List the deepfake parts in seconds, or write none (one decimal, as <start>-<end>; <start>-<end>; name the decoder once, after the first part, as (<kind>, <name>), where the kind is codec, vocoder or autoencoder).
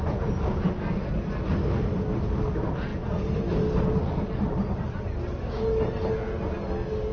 none